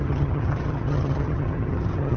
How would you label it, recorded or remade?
remade